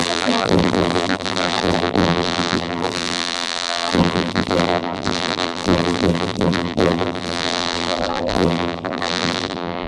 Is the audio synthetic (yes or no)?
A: yes